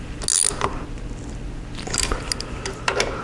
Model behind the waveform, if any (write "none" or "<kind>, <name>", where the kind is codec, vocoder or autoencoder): none